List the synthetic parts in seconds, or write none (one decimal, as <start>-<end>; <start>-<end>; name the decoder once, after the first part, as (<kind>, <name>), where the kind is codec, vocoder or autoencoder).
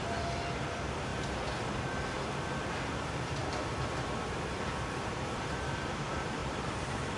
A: 0.0-1.1 (vocoder, BigVGAN v2); 1.6-3.4; 5.1-7.2